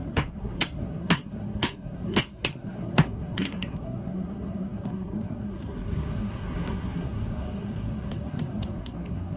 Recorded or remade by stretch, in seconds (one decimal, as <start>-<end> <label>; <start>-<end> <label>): 0.0-9.4 remade